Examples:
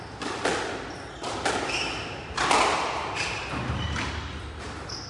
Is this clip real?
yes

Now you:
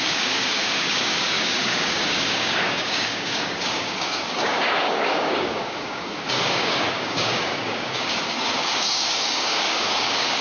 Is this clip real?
no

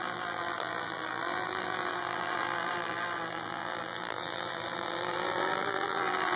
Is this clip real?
no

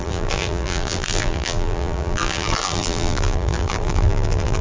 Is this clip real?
no